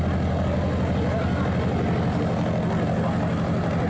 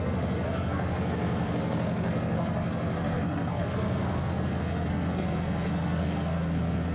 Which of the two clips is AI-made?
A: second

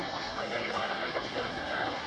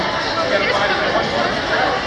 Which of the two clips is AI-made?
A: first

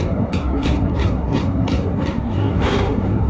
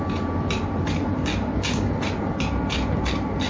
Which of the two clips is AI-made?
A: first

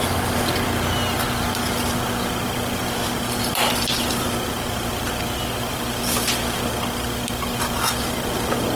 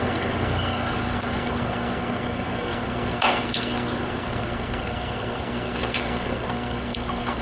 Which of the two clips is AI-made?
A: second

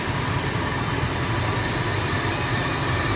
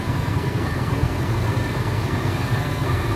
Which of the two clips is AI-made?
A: second